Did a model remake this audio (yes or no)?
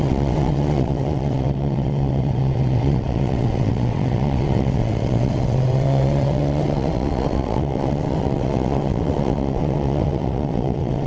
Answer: yes